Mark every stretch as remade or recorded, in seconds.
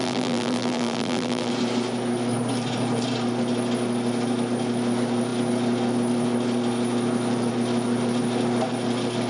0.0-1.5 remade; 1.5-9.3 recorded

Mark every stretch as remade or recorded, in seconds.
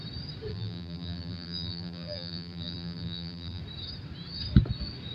0.0-0.5 recorded; 0.5-3.6 remade; 3.6-5.1 recorded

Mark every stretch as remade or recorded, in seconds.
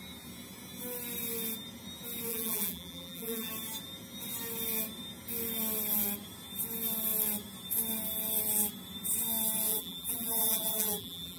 0.0-2.3 recorded; 2.3-3.5 remade; 3.5-9.7 recorded; 9.7-11.4 remade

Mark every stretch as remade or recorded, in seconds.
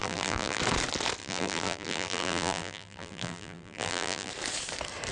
0.0-0.6 remade; 0.6-1.2 recorded; 1.2-4.3 remade; 4.3-5.1 recorded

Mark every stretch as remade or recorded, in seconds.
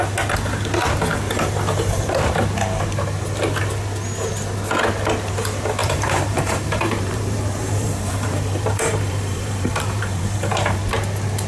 0.0-5.8 recorded; 5.8-10.8 remade; 10.8-11.5 recorded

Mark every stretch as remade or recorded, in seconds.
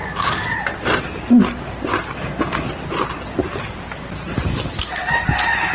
0.0-1.0 remade; 1.0-5.7 recorded